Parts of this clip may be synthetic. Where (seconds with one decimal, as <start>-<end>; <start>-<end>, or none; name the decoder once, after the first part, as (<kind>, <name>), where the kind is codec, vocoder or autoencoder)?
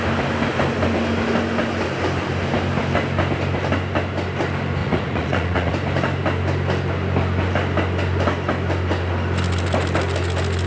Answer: 4.8-5.7 (vocoder, Vocos)